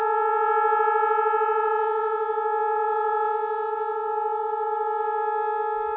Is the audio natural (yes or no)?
yes